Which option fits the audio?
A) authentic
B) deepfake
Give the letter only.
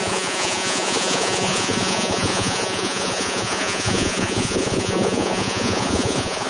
B